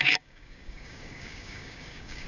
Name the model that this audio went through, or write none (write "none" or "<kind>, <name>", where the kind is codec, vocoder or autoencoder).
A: codec, DAC